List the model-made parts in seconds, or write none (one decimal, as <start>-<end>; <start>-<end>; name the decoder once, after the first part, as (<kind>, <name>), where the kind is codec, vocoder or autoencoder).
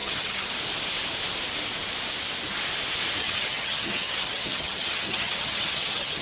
0.0-0.5 (vocoder, HiFi-GAN); 3.2-6.2